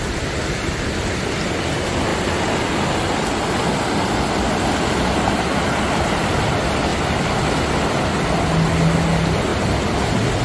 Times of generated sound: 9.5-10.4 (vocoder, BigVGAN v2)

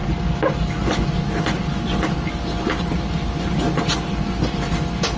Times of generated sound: none

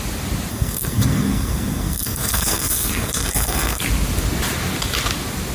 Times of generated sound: 0.5-3.8 (codec, SNAC)